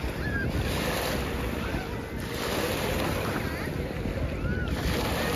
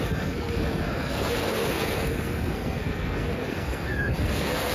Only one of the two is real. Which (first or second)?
first